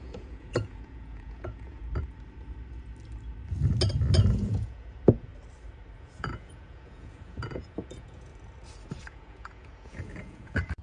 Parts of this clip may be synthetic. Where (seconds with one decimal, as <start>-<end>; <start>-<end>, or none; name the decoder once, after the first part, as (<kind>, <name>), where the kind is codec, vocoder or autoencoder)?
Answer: 0.0-1.8 (vocoder, Vocos); 4.3-5.3; 6.0-8.3; 9.0-10.8